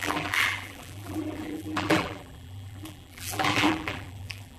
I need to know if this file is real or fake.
fake